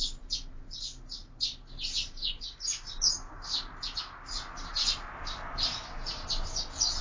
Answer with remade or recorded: recorded